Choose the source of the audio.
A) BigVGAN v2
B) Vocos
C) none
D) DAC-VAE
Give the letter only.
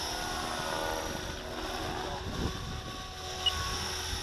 C